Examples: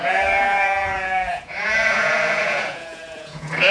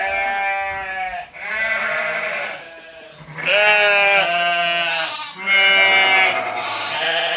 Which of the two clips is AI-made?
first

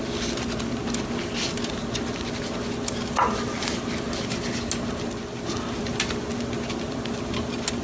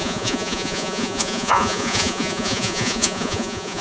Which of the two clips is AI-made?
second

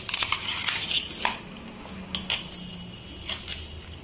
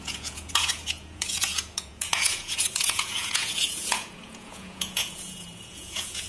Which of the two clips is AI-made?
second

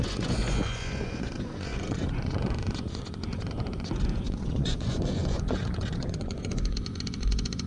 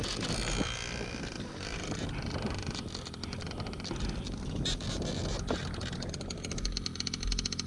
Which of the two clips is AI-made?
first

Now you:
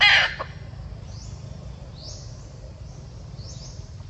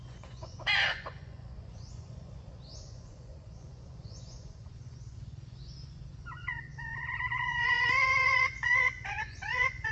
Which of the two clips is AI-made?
second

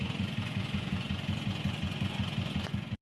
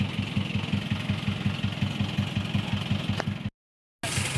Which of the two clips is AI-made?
first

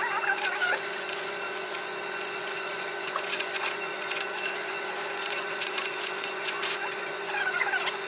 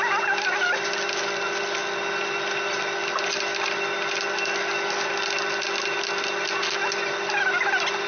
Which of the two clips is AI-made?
first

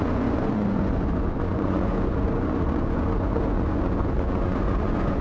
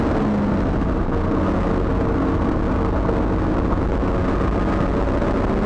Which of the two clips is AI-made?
first